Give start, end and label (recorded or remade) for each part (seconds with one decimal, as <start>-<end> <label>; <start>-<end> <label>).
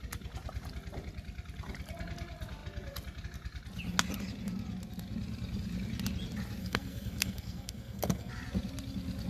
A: 0.0-6.6 recorded; 6.6-8.3 remade; 8.3-9.3 recorded